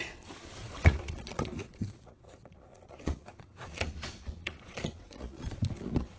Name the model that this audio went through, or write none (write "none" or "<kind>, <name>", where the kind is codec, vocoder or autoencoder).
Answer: vocoder, Vocos